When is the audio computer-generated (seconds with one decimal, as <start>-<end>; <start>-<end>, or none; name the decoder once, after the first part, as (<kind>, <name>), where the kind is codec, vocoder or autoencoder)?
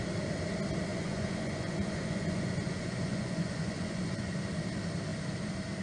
0.9-4.4 (vocoder, Vocos)